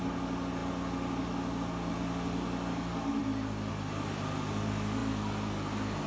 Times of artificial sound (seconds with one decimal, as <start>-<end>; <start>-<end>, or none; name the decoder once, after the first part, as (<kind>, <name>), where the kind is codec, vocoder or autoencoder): none